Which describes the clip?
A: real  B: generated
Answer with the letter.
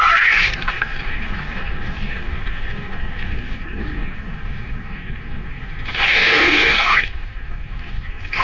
B